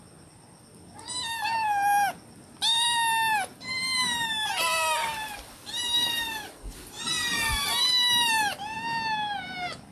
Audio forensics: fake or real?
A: real